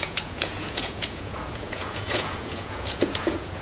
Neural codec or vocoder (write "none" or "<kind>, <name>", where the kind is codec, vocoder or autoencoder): vocoder, Vocos